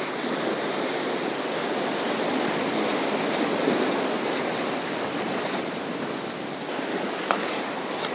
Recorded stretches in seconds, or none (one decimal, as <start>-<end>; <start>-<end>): 0.0-6.9; 7.6-8.1